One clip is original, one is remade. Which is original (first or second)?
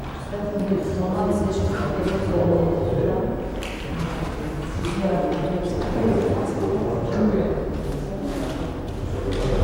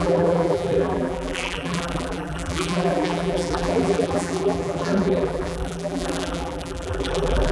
first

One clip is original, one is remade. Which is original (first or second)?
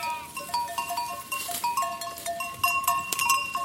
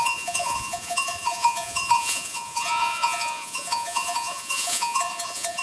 first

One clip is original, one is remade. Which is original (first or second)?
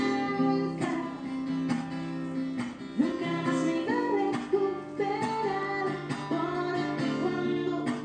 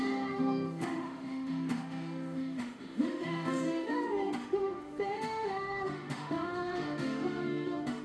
first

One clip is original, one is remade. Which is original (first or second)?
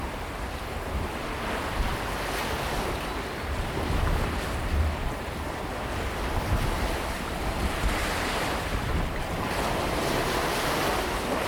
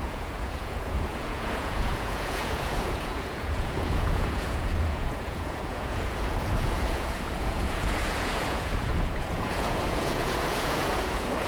first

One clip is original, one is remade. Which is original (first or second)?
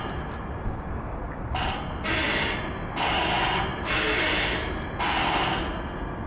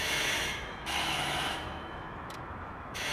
first